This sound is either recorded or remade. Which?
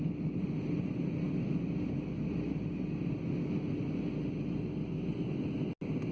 recorded